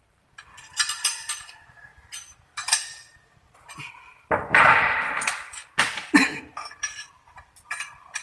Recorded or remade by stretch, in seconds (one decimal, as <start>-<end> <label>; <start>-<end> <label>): 0.0-5.6 remade; 5.6-6.4 recorded; 6.4-8.2 remade